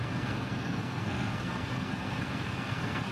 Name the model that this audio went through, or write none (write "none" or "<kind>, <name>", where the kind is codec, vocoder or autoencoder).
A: codec, SNAC